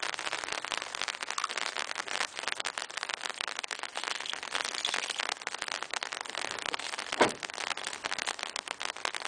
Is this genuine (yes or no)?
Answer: yes